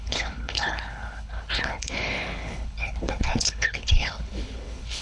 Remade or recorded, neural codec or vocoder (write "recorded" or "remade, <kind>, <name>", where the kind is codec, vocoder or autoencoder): remade, codec, HILCodec